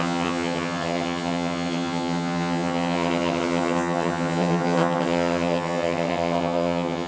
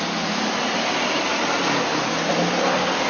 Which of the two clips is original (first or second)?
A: second